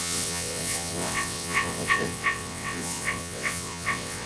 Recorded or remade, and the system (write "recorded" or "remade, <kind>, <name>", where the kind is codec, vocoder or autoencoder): remade, vocoder, WaveNeXt